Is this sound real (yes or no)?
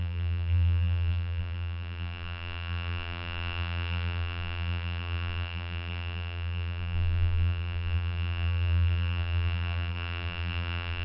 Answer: no